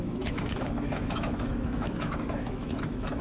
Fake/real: fake